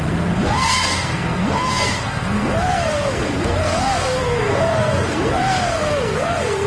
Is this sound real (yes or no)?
no